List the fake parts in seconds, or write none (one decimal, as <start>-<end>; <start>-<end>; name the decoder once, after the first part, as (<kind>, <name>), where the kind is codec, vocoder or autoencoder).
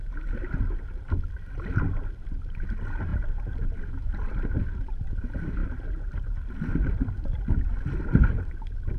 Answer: none